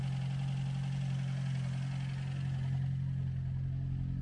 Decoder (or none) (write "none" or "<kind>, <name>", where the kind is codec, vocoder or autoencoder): none